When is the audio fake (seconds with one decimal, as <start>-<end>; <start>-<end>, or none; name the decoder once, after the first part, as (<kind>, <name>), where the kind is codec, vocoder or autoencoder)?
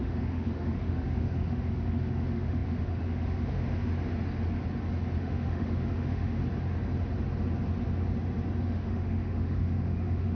0.0-3.9 (autoencoder, DAC-VAE); 5.2-6.4; 8.6-10.3